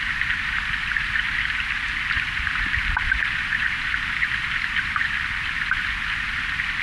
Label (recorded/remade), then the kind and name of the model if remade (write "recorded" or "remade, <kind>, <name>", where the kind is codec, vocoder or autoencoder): recorded